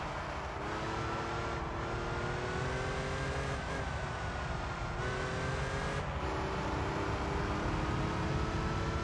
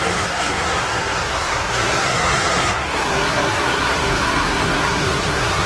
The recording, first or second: first